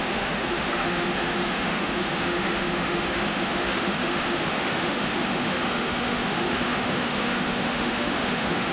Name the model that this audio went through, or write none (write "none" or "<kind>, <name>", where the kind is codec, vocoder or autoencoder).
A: autoencoder, DAC-VAE